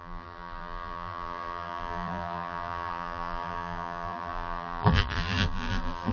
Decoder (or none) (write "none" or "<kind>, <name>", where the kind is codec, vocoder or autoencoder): vocoder, BigVGAN v2